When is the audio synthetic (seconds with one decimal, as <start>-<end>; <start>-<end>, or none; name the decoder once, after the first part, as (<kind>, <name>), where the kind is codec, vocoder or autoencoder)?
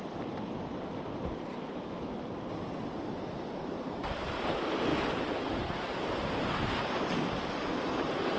1.5-2.3 (autoencoder, DAC-VAE)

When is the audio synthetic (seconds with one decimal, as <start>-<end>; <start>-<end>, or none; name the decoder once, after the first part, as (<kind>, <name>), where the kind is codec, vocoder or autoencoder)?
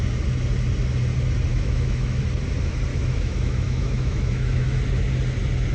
1.5-2.2 (autoencoder, DAC-VAE); 2.9-4.8